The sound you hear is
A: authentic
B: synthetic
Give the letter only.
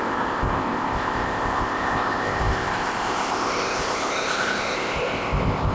B